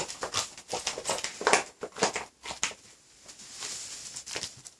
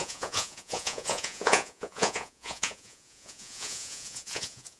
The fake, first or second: second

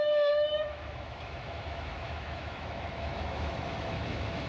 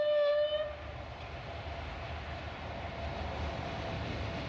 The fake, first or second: first